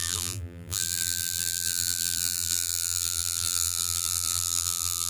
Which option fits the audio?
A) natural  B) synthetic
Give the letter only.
B